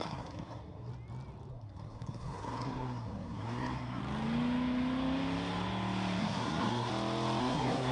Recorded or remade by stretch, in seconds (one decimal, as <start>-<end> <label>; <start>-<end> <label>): 0.0-0.9 remade; 0.9-1.5 recorded; 1.5-4.0 remade; 4.0-6.2 recorded; 6.2-6.9 remade; 6.9-7.4 recorded; 7.4-7.9 remade